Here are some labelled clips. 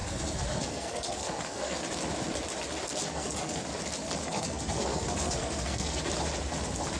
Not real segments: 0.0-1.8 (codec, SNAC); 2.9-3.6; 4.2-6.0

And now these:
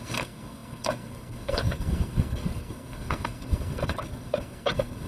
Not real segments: 0.0-5.1 (codec, SNAC)

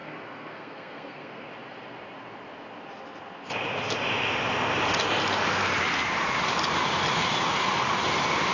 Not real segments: 0.0-1.5 (codec, SNAC)

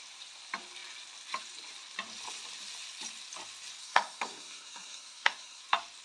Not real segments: 3.8-5.6 (codec, SNAC)

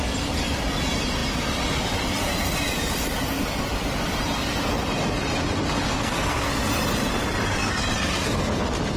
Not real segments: 5.9-6.5 (codec, SNAC)

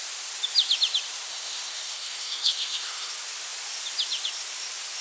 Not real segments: 1.3-3.1 (codec, SNAC)

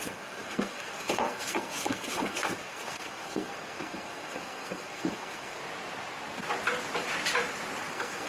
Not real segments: 0.0-5.6 (codec, SNAC); 7.9-8.3